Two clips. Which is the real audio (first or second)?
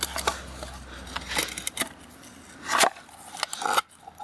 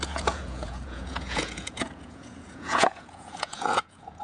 first